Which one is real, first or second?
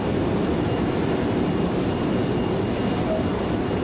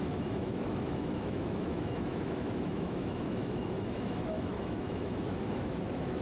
first